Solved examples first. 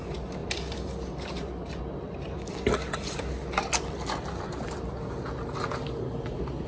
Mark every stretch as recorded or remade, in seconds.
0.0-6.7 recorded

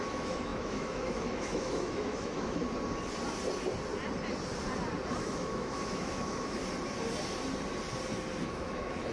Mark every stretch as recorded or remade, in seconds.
0.0-2.6 remade; 2.6-5.2 recorded; 5.2-6.6 remade; 6.6-8.4 recorded; 8.4-9.1 remade

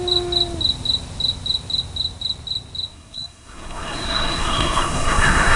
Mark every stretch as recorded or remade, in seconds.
0.0-2.9 recorded; 2.9-5.6 remade

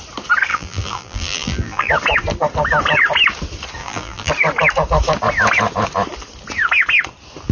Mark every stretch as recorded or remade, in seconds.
0.0-0.5 recorded; 0.5-1.9 remade; 1.9-3.8 recorded; 3.8-4.3 remade; 4.3-7.5 recorded

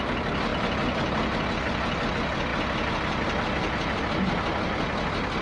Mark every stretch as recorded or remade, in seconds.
0.0-0.5 recorded; 0.5-2.1 remade; 2.1-5.4 recorded

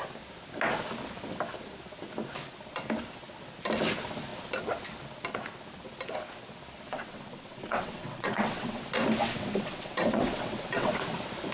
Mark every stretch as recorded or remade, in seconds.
0.0-6.9 recorded; 6.9-8.8 remade; 8.8-9.3 recorded; 9.3-10.9 remade; 10.9-11.5 recorded

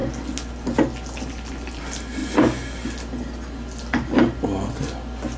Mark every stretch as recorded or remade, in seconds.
0.0-5.4 recorded

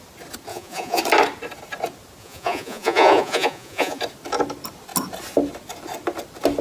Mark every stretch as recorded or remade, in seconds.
0.0-0.5 recorded; 0.5-1.0 remade; 1.0-2.2 recorded; 2.2-4.0 remade; 4.0-6.6 recorded